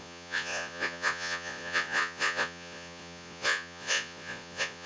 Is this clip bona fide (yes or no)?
no